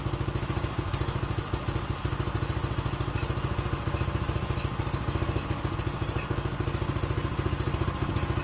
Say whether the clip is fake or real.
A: real